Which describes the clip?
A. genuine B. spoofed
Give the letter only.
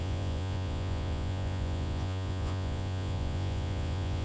B